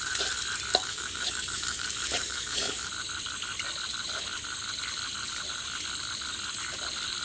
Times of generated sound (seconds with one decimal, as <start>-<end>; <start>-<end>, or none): 0.7-2.9